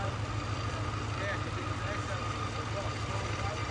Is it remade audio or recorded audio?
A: recorded